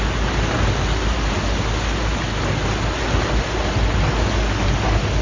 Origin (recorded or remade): recorded